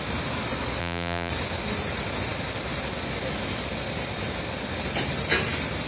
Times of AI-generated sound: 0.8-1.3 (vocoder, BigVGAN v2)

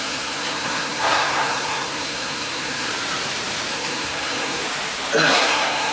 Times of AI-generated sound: 0.0-2.9 (codec, SNAC); 3.7-4.6; 5.3-5.9

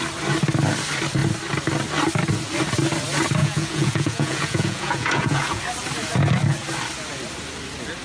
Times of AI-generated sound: 3.4-5.6 (vocoder, Vocos)

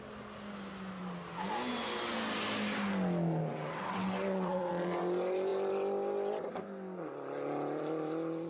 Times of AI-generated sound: 3.5-4.7 (vocoder, WaveNeXt)